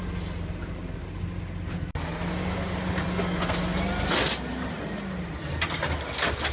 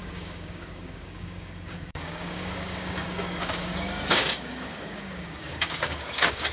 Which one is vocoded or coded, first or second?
second